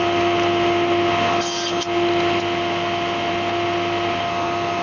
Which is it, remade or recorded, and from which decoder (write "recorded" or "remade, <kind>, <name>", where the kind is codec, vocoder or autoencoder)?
recorded